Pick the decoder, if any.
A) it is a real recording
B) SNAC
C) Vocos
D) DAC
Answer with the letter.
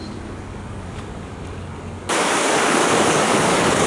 D